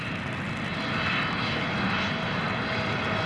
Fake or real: real